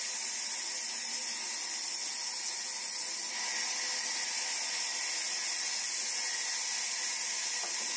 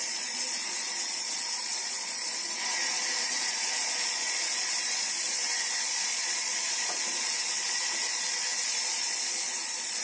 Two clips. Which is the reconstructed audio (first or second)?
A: second